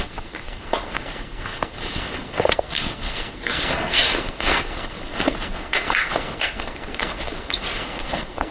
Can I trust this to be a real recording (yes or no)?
no